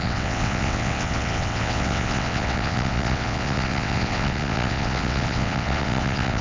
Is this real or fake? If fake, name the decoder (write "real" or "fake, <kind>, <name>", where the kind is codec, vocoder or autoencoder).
fake, vocoder, WaveNeXt